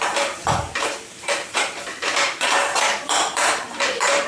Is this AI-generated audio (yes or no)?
yes